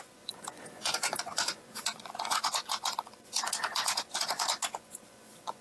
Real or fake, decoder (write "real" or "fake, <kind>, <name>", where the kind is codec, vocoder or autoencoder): fake, vocoder, Vocos